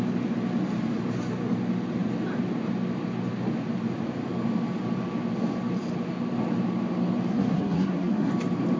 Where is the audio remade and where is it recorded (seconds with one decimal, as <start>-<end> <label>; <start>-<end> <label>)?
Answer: 0.0-7.3 recorded; 7.3-8.3 remade; 8.3-8.8 recorded